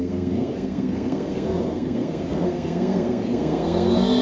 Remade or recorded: remade